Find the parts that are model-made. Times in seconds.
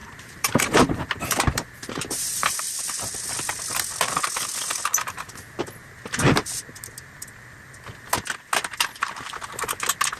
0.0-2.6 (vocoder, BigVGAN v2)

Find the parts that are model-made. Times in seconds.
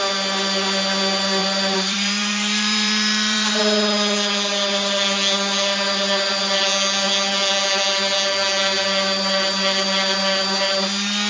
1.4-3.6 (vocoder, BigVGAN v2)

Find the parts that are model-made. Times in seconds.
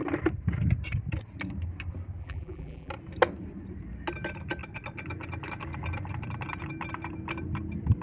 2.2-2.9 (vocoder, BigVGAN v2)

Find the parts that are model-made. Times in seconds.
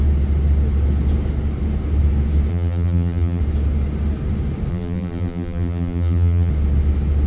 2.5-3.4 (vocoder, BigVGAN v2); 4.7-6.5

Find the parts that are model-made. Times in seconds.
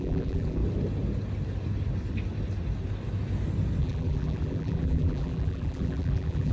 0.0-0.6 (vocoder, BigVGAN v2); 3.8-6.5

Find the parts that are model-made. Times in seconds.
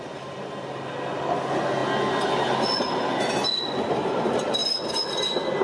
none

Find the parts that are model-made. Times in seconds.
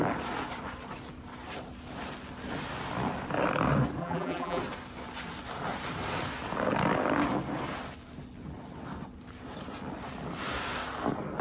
4.0-4.6 (vocoder, BigVGAN v2)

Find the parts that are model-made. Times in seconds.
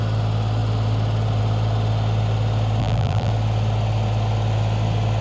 2.8-3.3 (vocoder, BigVGAN v2)